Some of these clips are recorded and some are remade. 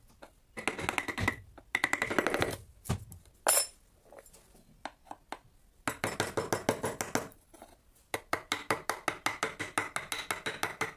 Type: recorded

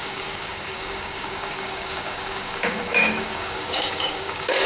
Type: remade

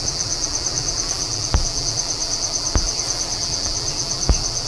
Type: remade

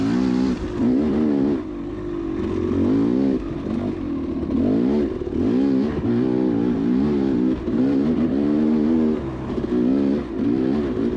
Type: recorded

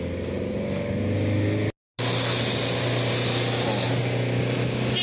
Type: recorded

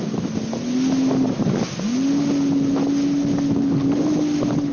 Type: recorded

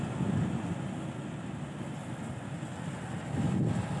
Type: recorded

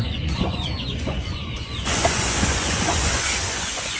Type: remade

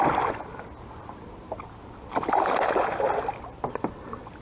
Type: recorded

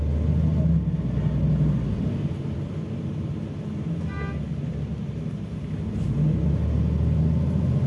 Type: recorded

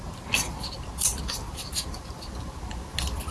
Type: recorded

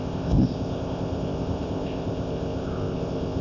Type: remade